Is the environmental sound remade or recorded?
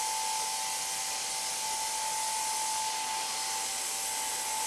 recorded